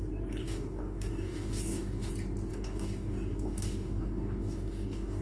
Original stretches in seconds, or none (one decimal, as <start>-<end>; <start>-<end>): 0.0-0.4; 2.1-2.5